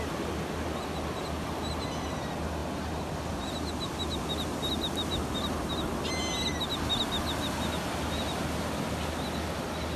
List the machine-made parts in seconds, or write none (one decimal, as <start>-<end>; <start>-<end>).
none